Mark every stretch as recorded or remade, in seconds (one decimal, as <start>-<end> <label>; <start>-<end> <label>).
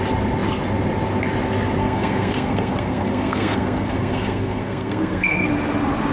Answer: 0.0-1.8 recorded; 1.8-5.5 remade; 5.5-6.1 recorded